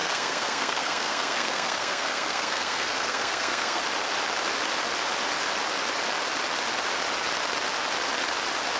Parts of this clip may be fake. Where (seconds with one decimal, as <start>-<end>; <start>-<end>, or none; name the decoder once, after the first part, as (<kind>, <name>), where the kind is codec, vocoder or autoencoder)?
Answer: 0.0-3.8 (codec, SNAC)